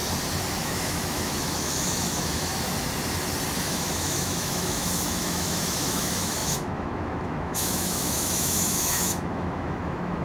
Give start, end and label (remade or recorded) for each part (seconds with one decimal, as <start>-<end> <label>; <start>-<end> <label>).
0.0-0.6 recorded; 0.6-2.5 remade; 2.5-3.6 recorded; 3.6-10.2 remade